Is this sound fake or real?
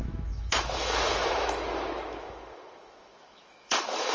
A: fake